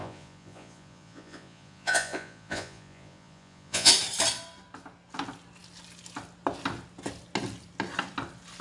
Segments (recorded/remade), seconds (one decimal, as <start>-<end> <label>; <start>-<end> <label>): 0.0-3.9 remade; 3.9-8.6 recorded